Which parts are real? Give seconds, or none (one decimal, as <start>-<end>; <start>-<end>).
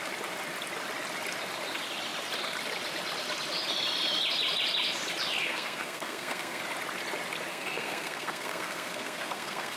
0.0-5.4; 6.6-7.5